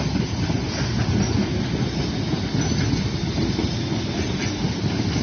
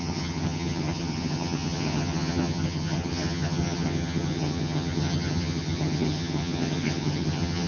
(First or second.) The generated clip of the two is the second